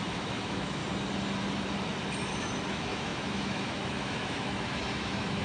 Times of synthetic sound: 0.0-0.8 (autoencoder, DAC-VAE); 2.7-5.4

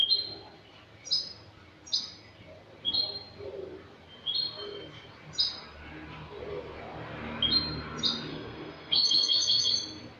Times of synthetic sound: 8.3-9.7 (codec, SNAC)

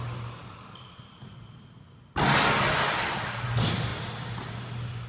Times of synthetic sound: none

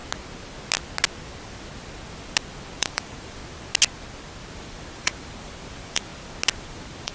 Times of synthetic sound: 2.8-3.4 (vocoder, BigVGAN v2); 4.5-6.1; 6.6-7.1

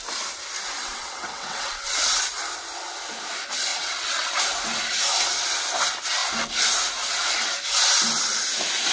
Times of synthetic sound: 0.8-2.0 (vocoder, WaveNeXt); 3.7-4.3

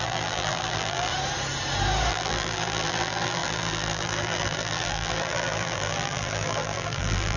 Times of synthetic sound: 0.0-1.1 (vocoder, BigVGAN v2); 2.1-7.4

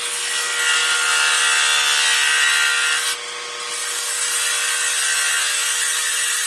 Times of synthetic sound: none

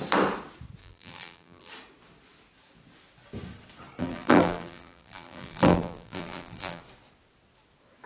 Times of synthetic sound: 0.8-1.7 (vocoder, BigVGAN v2); 4.0-6.8